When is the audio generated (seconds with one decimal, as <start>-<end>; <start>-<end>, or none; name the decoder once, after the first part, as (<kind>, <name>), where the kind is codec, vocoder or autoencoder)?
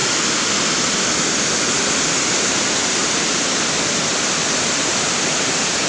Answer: 2.3-3.0 (vocoder, BigVGAN v2); 4.1-5.9